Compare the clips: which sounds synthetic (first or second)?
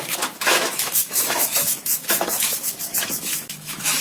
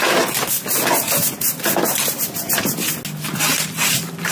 first